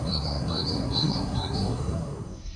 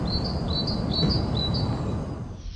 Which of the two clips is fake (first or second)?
first